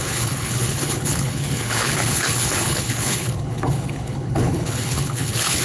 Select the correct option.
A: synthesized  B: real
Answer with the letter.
A